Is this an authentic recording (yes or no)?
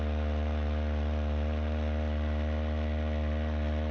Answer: yes